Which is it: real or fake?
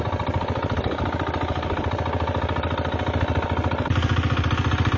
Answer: real